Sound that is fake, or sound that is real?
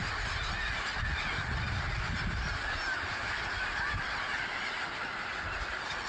real